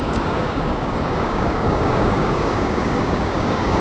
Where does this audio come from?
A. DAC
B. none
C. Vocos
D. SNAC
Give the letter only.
A